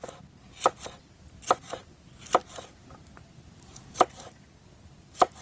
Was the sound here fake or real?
real